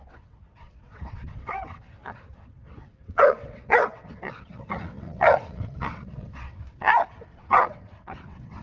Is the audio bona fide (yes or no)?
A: no